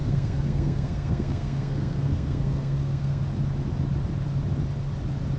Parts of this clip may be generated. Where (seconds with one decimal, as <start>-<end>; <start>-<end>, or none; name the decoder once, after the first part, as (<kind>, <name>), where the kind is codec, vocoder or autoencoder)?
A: 0.0-3.2 (codec, SNAC)